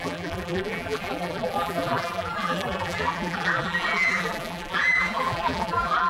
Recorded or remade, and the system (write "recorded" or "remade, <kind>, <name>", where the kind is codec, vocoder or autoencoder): remade, vocoder, BigVGAN v2